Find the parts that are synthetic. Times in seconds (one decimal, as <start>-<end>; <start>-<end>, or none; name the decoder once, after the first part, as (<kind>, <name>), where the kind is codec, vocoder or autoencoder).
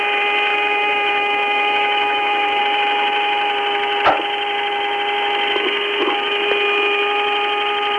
0.5-2.6 (autoencoder, DAC-VAE)